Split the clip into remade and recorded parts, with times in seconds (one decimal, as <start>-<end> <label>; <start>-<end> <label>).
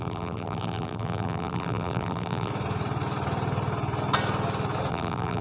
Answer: 0.0-2.5 remade; 2.5-4.9 recorded; 4.9-5.4 remade